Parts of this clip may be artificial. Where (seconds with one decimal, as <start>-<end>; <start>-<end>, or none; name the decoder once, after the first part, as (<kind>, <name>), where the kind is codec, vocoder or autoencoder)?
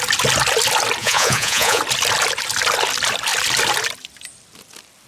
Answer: 1.0-1.8 (vocoder, Vocos)